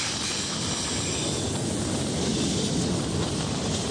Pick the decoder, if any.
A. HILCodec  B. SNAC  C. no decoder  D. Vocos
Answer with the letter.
C